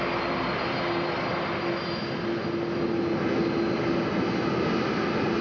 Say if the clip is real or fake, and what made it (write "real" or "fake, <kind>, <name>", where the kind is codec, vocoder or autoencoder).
real